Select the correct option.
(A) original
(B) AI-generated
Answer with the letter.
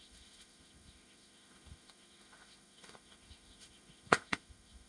B